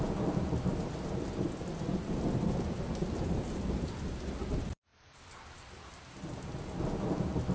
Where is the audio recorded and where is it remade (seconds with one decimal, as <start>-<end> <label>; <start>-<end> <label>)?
0.0-7.5 recorded